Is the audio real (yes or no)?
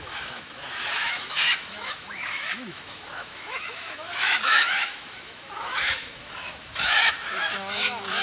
no